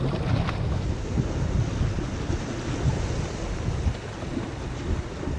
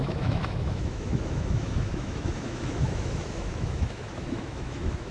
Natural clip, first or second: first